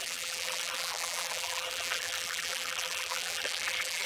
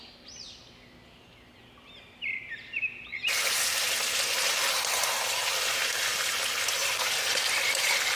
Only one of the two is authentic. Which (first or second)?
second